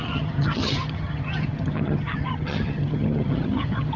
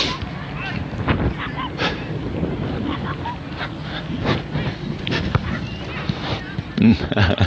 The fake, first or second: first